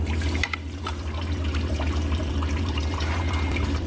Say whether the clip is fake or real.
fake